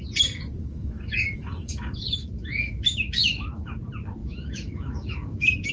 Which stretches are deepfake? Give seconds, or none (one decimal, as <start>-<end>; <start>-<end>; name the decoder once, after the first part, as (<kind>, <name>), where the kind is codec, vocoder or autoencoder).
0.6-3.8 (autoencoder, DAC-VAE); 4.2-5.7

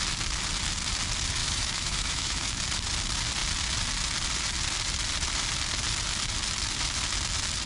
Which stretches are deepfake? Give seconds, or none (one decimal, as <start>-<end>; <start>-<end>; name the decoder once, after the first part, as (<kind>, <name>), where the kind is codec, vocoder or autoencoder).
1.4-2.6 (autoencoder, DAC-VAE)

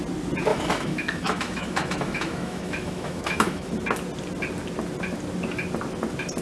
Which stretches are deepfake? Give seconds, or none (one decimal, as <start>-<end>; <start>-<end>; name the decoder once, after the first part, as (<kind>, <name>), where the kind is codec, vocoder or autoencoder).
0.5-3.7 (autoencoder, DAC-VAE)

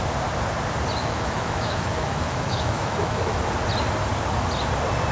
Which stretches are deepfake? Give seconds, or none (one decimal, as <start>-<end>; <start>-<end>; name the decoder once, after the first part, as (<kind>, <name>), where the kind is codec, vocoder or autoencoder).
1.0-3.4 (autoencoder, DAC-VAE)

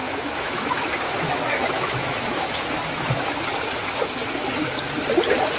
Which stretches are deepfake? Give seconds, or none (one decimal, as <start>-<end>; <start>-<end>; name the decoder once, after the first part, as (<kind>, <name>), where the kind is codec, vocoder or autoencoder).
0.0-3.3 (autoencoder, DAC-VAE)

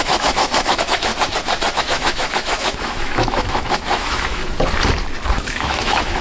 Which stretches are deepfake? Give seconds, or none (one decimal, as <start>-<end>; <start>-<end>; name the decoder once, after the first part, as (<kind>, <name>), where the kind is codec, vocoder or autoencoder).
0.0-1.1 (autoencoder, DAC-VAE); 1.8-4.4; 5.3-6.2

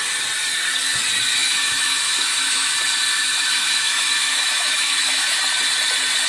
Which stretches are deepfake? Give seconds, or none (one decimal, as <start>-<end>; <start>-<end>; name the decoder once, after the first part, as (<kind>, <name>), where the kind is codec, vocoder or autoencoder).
1.4-2.7 (autoencoder, DAC-VAE); 3.1-5.4